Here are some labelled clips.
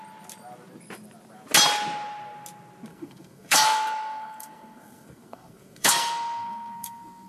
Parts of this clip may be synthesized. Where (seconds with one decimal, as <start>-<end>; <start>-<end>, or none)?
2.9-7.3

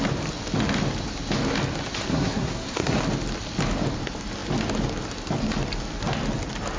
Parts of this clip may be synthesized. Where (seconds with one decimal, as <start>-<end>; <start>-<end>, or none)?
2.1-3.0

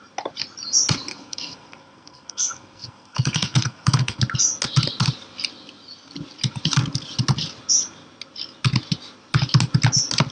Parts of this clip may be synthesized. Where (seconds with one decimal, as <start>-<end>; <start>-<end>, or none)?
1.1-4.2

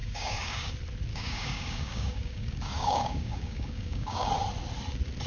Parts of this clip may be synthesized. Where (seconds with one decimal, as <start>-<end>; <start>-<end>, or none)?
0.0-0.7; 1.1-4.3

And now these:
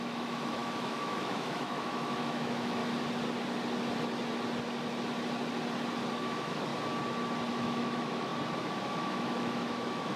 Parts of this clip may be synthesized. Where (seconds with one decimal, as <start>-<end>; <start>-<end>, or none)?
0.0-2.8; 6.2-6.7; 7.5-8.3; 8.8-10.2

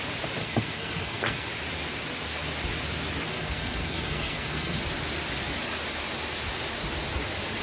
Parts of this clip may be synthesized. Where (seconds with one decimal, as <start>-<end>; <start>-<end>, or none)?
0.4-1.5; 3.3-4.8

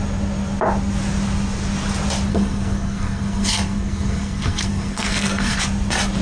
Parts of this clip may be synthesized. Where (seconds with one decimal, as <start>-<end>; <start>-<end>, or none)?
2.3-5.6